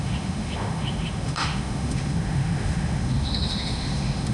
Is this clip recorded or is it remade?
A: remade